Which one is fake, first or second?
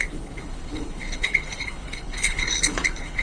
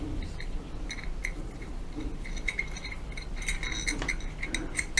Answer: first